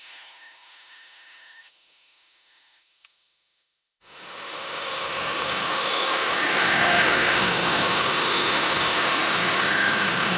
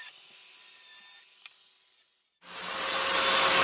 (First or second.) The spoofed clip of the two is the first